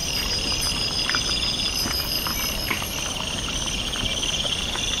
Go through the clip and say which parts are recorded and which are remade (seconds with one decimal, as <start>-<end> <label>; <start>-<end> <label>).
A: 0.0-5.0 recorded